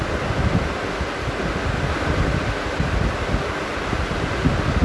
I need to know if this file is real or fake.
real